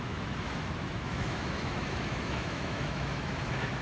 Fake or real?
fake